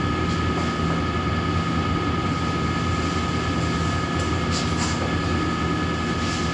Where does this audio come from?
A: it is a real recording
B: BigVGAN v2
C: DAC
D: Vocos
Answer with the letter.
A